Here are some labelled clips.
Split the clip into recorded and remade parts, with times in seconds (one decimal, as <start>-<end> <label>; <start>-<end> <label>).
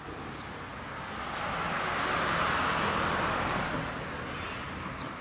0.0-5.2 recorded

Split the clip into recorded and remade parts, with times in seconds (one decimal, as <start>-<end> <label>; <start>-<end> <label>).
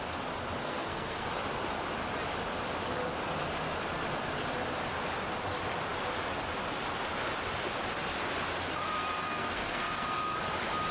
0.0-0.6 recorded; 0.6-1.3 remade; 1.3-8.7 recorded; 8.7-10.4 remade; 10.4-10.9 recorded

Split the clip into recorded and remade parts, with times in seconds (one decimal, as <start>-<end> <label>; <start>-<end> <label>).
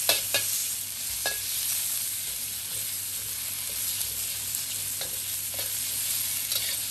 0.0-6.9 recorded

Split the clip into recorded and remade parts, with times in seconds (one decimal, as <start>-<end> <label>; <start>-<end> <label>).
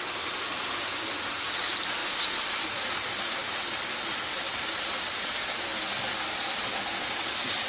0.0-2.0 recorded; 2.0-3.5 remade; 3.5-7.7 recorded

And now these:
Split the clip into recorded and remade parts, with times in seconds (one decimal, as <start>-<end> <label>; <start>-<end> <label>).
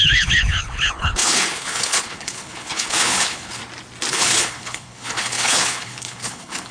0.0-3.6 remade; 3.6-4.1 recorded; 4.1-6.7 remade